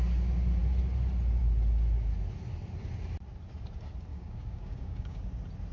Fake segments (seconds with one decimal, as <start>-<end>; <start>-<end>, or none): 4.1-5.2